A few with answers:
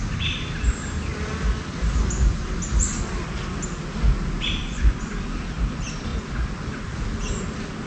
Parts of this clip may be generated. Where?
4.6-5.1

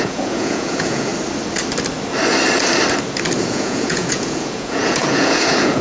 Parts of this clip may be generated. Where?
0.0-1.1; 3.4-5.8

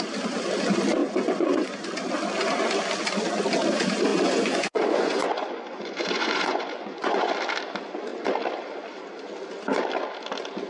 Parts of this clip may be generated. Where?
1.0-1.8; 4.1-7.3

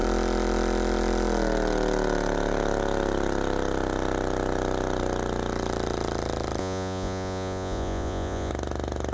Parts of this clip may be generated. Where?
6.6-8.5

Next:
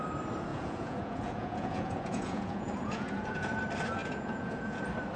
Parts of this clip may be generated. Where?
0.5-3.6; 4.0-4.8

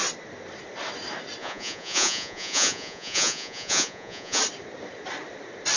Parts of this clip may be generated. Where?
1.4-4.4

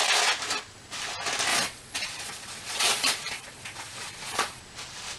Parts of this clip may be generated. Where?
1.5-4.6